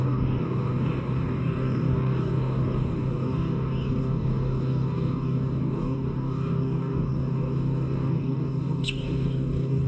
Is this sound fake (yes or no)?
yes